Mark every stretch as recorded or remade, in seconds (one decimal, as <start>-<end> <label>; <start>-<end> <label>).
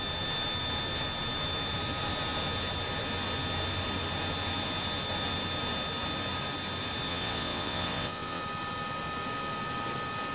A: 0.0-7.1 recorded; 7.1-8.4 remade; 8.4-10.3 recorded